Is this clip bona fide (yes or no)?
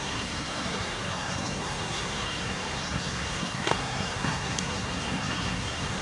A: no